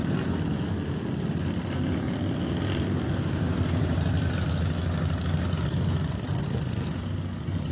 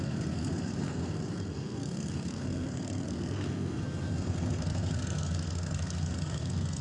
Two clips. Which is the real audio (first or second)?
first